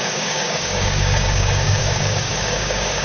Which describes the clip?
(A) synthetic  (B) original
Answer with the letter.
A